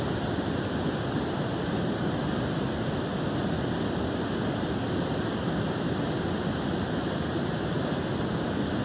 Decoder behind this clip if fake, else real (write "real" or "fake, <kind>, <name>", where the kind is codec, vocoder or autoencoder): real